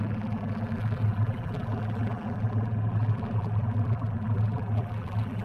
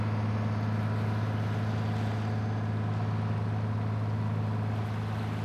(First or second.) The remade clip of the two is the first